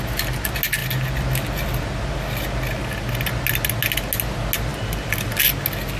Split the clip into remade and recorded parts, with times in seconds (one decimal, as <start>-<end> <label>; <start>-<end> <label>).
0.0-6.0 recorded